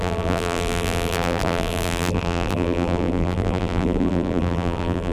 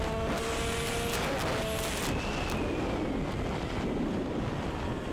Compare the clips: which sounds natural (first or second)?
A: second